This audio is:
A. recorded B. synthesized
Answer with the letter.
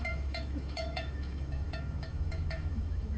B